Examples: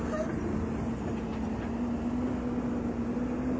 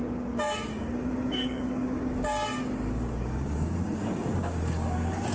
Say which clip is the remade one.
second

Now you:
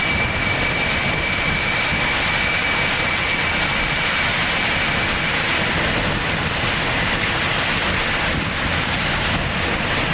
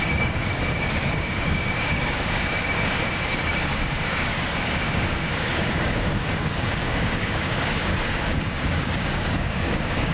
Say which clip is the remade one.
second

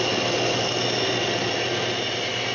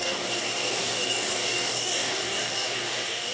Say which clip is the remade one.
second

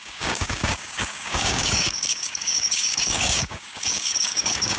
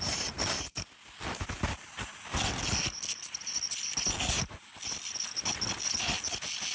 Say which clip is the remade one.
first